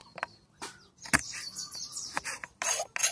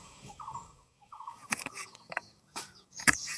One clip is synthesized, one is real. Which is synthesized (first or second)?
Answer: second